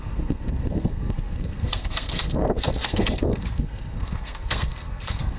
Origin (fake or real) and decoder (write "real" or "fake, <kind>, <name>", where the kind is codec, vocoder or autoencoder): fake, codec, SNAC